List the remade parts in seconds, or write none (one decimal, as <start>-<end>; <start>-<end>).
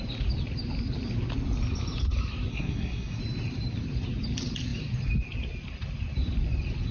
2.5-3.2